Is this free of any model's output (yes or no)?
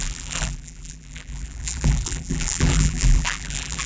no